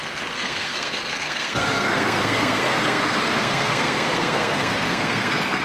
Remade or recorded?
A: remade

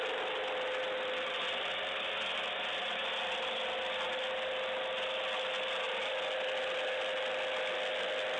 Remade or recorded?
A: recorded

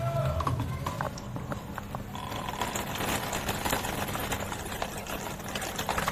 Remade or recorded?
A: recorded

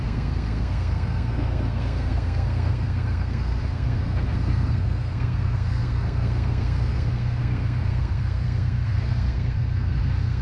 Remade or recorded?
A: remade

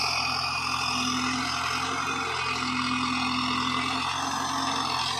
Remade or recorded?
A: recorded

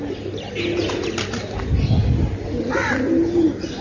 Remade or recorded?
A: recorded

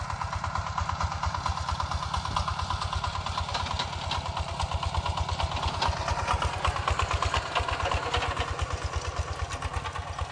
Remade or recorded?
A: recorded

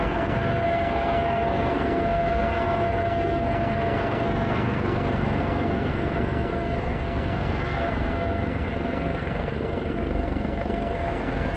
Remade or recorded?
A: remade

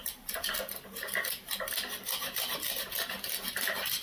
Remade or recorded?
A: recorded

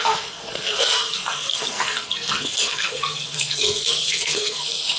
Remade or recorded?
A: remade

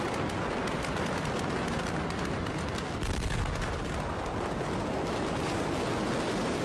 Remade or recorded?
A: recorded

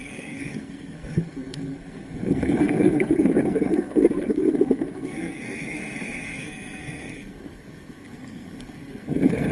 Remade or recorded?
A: remade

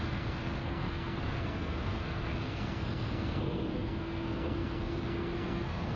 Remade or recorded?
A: remade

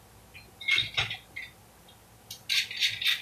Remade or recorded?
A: recorded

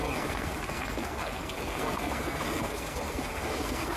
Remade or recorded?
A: remade